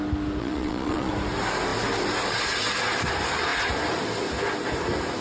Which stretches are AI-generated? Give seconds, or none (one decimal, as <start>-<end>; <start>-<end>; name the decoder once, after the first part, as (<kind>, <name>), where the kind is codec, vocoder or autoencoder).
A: 0.4-1.1 (vocoder, Vocos)